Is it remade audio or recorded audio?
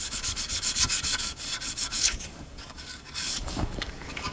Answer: remade